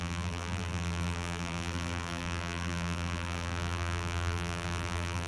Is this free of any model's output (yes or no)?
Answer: no